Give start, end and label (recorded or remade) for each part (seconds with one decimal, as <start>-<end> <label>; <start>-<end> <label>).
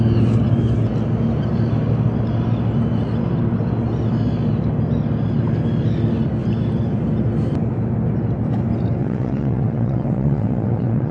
0.0-9.0 recorded; 9.0-11.1 remade